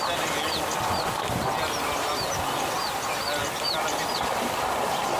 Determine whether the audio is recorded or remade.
recorded